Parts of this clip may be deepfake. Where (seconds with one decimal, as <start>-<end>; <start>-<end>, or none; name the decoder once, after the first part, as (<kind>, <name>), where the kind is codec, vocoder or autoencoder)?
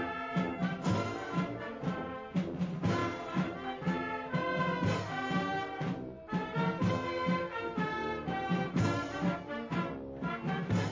none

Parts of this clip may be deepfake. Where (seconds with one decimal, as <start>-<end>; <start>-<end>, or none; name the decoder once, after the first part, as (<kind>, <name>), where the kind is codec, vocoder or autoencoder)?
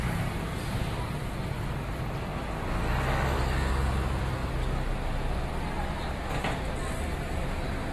none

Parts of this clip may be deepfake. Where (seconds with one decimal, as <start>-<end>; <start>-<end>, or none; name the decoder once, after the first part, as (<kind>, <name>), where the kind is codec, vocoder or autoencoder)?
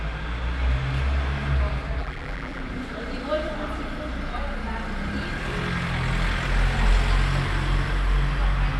2.0-2.6 (vocoder, BigVGAN v2)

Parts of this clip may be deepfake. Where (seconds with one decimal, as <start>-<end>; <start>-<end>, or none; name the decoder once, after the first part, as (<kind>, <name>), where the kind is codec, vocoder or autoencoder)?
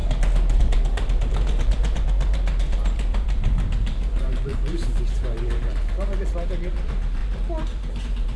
0.6-8.4 (vocoder, BigVGAN v2)